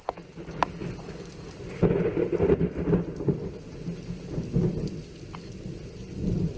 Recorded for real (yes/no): yes